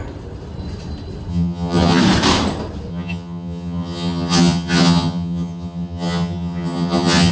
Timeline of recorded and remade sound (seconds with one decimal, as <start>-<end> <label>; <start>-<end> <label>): 0.0-1.3 recorded; 1.3-2.0 remade; 2.0-2.9 recorded; 2.9-7.3 remade